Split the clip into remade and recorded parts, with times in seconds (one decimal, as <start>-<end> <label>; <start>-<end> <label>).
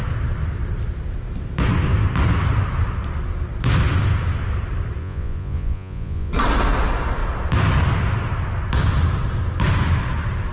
0.0-5.0 recorded; 5.0-6.3 remade; 6.3-10.5 recorded